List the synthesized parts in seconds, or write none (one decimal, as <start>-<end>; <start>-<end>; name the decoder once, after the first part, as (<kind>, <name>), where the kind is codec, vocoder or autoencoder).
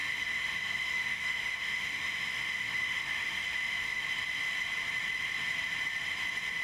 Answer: 0.0-4.0 (autoencoder, DAC-VAE)